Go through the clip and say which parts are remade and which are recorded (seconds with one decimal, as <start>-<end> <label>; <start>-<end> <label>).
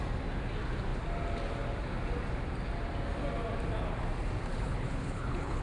0.0-4.5 recorded; 4.5-5.6 remade